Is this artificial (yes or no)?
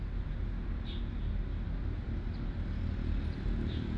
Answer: no